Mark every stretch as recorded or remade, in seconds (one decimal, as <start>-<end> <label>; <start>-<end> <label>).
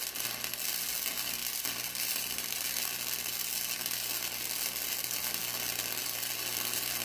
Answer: 0.0-1.4 recorded; 1.4-2.8 remade; 2.8-7.0 recorded